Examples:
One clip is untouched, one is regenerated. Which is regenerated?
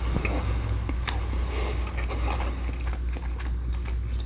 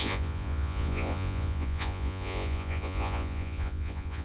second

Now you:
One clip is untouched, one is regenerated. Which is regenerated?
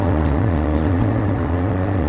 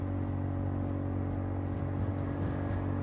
first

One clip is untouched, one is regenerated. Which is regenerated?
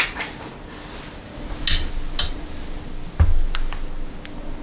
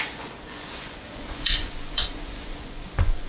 second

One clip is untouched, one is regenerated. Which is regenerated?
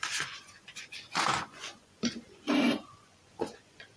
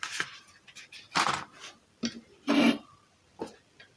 first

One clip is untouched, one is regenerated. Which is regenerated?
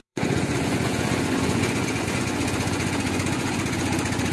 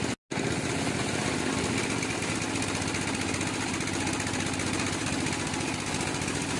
first